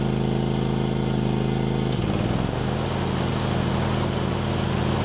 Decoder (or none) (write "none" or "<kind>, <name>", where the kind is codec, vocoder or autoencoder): none